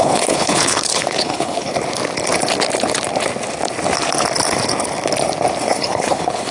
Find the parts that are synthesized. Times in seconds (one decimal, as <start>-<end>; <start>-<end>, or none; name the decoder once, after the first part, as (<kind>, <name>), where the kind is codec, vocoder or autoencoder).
0.0-1.7 (codec, HILCodec); 5.6-6.5